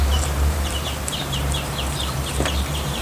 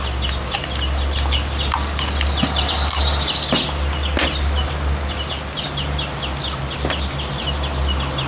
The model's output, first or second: first